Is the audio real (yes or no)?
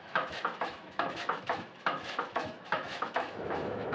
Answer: no